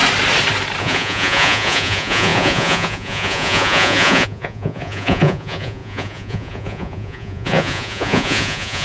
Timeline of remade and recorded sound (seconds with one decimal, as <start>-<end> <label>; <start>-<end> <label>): 0.0-0.8 recorded; 0.8-8.8 remade